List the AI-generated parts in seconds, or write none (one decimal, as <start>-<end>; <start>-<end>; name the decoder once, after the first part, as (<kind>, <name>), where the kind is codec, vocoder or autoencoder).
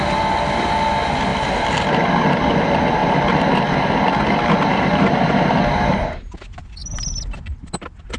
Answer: none